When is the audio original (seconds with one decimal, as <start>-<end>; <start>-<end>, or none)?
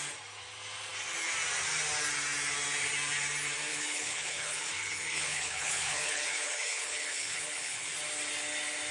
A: 0.0-3.7; 7.9-8.9